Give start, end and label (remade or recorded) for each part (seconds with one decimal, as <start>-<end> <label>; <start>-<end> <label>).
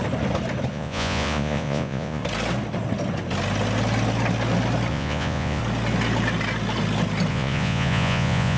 0.0-0.7 recorded; 0.7-2.2 remade; 2.2-4.9 recorded; 4.9-5.6 remade; 5.6-7.3 recorded; 7.3-8.6 remade